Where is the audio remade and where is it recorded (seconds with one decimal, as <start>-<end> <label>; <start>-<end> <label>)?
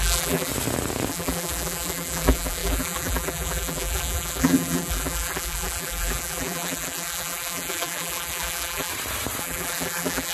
0.0-0.5 remade; 0.5-1.1 recorded; 1.1-8.9 remade; 8.9-9.4 recorded; 9.4-10.3 remade